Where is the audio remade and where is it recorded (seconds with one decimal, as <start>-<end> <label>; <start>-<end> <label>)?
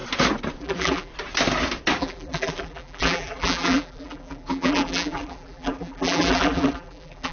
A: 0.0-0.6 recorded; 0.6-1.1 remade; 1.1-2.0 recorded; 2.0-7.3 remade